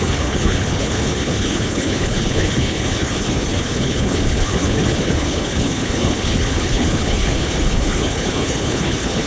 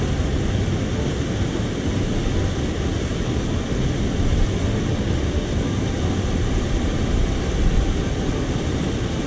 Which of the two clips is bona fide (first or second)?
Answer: second